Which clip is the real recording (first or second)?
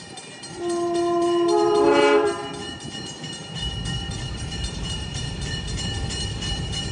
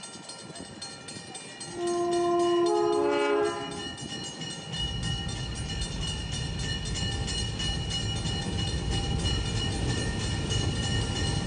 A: second